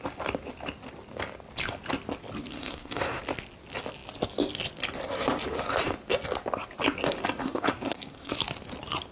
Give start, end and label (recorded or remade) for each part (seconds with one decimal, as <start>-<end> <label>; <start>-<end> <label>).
0.0-2.5 recorded; 2.5-3.2 remade; 3.2-7.4 recorded; 7.4-8.3 remade; 8.3-9.1 recorded